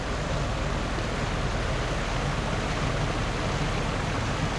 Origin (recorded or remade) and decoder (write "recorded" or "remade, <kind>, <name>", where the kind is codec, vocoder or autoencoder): recorded